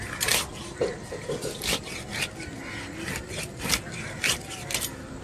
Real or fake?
real